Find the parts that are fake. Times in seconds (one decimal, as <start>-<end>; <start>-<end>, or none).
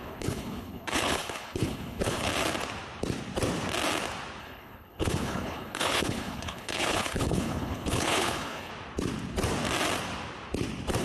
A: 0.0-2.3; 4.4-8.7